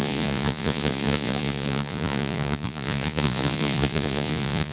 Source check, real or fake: fake